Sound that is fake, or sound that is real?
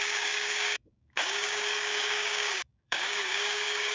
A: fake